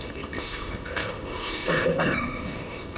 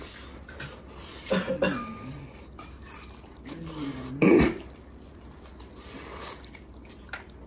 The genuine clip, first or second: second